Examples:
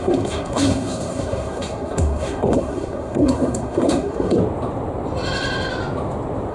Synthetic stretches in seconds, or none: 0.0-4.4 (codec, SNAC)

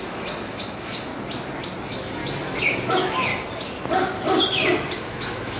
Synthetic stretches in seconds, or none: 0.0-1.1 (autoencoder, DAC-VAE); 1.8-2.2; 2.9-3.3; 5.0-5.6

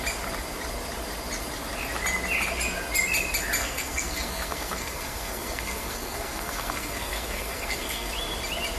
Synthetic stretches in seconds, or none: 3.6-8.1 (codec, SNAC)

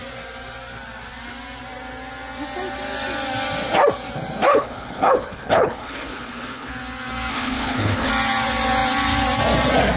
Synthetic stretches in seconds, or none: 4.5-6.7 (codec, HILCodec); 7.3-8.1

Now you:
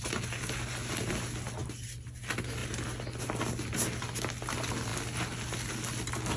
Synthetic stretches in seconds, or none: none